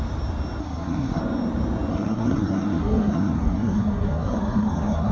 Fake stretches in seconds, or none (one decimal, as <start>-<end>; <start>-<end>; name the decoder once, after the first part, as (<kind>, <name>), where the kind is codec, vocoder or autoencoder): 0.6-1.2 (codec, SNAC); 1.9-5.1

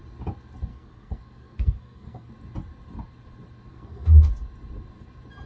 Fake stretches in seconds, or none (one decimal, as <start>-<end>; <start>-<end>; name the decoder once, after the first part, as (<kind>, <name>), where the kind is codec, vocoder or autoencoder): 0.7-2.3 (codec, SNAC); 3.7-4.3

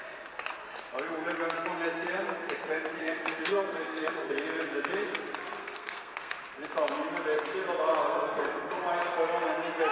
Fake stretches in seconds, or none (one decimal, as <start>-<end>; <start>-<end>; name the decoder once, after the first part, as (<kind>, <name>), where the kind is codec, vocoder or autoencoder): 3.0-4.3 (codec, SNAC); 5.6-6.3; 8.0-8.7

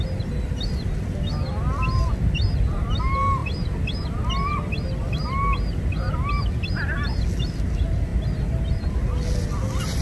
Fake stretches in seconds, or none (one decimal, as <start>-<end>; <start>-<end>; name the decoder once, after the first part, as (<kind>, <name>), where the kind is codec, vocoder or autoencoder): none